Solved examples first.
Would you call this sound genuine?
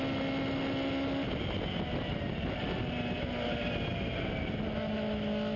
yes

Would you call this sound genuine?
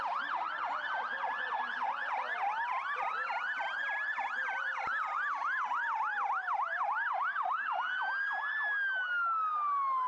yes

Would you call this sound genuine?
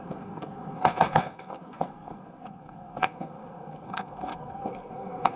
no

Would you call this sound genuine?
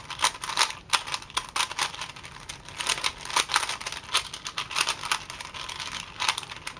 yes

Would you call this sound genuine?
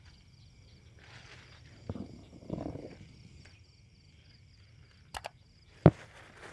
yes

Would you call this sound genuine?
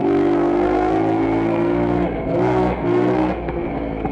no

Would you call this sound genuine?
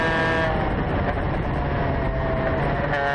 yes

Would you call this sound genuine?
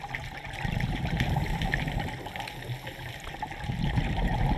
yes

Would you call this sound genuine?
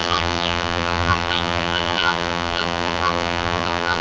no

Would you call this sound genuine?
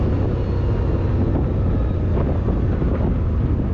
yes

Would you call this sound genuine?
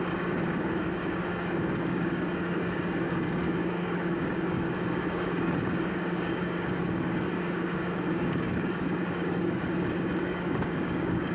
no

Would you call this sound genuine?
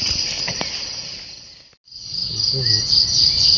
yes